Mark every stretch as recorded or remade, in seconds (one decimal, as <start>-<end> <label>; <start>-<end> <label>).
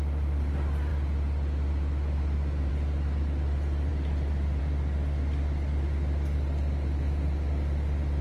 0.0-8.2 recorded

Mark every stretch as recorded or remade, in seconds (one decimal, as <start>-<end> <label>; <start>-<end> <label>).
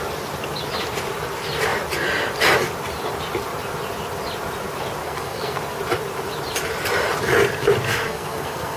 0.0-5.0 recorded; 5.0-5.6 remade; 5.6-7.9 recorded; 7.9-8.8 remade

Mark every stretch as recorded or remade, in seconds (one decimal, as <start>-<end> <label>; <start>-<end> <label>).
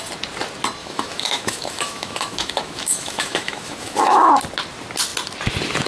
0.0-0.8 recorded; 0.8-4.3 remade; 4.3-5.9 recorded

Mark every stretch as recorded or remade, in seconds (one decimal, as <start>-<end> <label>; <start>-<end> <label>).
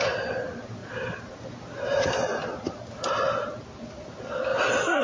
0.0-5.0 recorded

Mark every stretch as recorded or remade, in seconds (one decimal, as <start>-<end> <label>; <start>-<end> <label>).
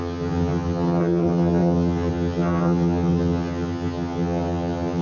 0.0-5.0 remade